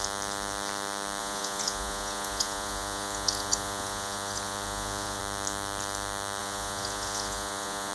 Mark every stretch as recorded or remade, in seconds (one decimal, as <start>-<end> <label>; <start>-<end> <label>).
0.0-1.2 recorded; 1.2-5.2 remade; 5.2-6.4 recorded; 6.4-7.9 remade